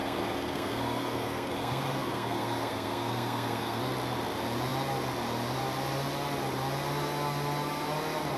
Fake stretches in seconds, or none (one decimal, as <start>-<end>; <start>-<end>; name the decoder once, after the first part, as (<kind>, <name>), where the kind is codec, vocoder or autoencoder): 0.0-3.8 (codec, SNAC)